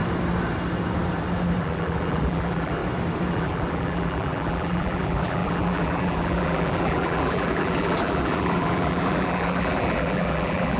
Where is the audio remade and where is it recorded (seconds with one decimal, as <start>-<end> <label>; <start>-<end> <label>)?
0.0-1.6 recorded; 1.6-2.8 remade; 2.8-3.3 recorded; 3.3-10.8 remade